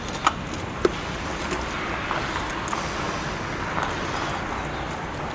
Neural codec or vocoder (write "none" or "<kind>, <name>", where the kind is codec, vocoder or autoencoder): none